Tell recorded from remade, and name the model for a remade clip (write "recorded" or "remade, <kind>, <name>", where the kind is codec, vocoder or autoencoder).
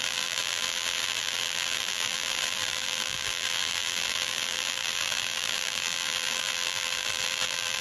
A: remade, vocoder, BigVGAN v2